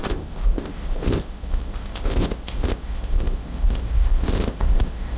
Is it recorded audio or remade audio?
remade